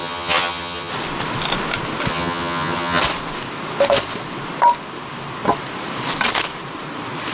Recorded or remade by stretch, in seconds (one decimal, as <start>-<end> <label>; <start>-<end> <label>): 0.0-0.9 remade; 0.9-2.1 recorded; 2.1-3.0 remade; 3.0-7.3 recorded